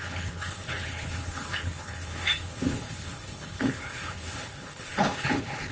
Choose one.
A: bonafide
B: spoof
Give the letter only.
B